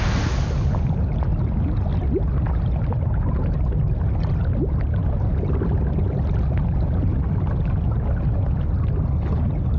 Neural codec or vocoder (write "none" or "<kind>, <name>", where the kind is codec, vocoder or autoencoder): none